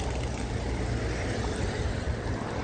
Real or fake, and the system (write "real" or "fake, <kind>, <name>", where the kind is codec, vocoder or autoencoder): real